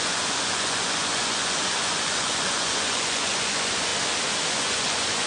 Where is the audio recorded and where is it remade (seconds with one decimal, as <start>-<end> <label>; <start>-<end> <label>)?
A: 0.0-3.9 remade; 3.9-4.5 recorded; 4.5-5.3 remade